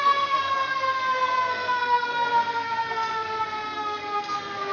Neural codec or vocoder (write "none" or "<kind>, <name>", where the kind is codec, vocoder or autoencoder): codec, SNAC